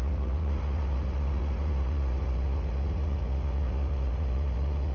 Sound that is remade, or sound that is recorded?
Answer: remade